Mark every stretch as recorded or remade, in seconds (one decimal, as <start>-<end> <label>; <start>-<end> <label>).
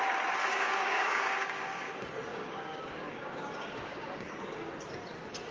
0.0-0.4 recorded; 0.4-1.9 remade; 1.9-2.3 recorded; 2.3-4.7 remade; 4.7-5.5 recorded